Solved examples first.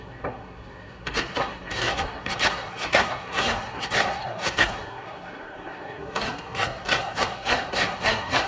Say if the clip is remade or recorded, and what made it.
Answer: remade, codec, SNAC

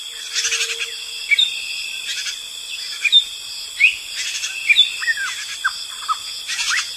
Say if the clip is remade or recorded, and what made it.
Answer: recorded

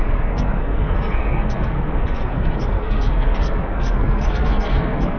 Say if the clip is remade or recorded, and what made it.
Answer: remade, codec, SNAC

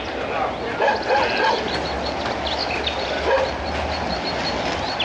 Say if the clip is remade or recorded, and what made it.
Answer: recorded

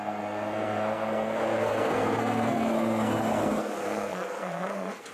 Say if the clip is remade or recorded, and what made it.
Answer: remade, codec, SNAC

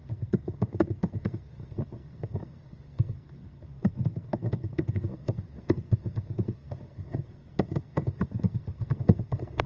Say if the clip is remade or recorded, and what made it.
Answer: remade, codec, SNAC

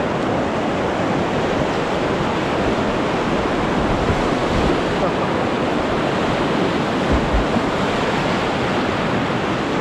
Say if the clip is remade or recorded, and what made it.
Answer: recorded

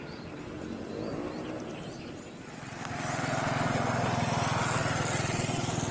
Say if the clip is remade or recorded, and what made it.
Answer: recorded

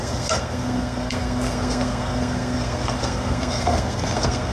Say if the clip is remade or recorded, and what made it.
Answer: remade, codec, SNAC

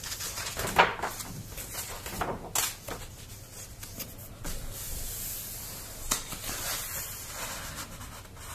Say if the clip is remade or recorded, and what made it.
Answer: recorded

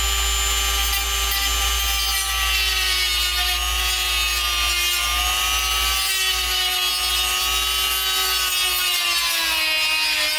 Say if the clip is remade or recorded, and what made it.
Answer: recorded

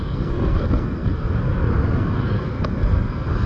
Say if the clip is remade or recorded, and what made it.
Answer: remade, codec, SNAC